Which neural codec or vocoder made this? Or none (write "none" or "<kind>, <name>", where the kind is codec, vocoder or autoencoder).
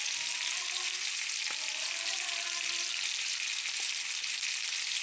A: none